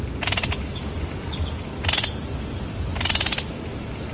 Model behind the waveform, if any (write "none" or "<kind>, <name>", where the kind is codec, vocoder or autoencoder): none